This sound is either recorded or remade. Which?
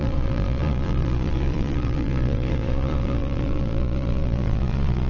remade